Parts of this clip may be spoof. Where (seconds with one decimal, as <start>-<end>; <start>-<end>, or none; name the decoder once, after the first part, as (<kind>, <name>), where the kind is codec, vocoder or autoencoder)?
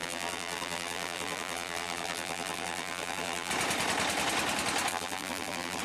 0.0-3.5 (vocoder, BigVGAN v2); 4.9-5.8